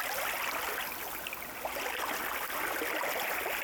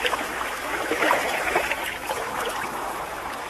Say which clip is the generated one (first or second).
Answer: second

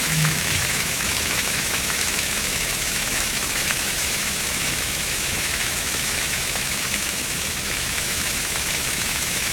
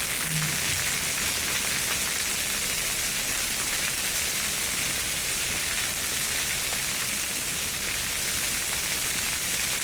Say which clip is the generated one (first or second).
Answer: first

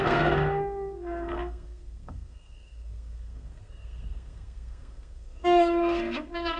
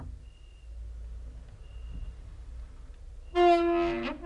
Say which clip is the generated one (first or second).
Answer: first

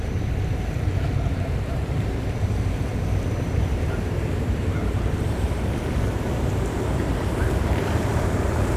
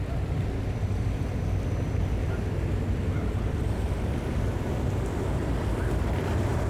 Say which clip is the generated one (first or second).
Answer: first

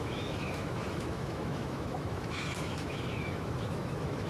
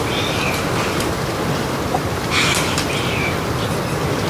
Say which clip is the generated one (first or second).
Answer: first